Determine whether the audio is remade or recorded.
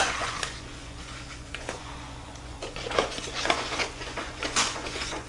remade